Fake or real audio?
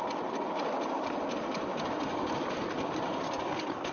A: real